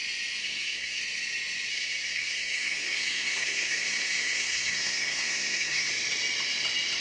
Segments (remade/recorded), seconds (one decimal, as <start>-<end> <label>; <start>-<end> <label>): 0.0-0.4 recorded; 0.4-1.0 remade; 1.0-1.7 recorded; 1.7-5.9 remade; 5.9-7.0 recorded